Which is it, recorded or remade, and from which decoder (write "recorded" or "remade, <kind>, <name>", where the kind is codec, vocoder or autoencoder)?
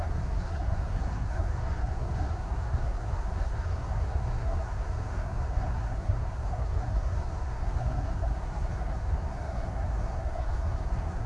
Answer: remade, codec, SNAC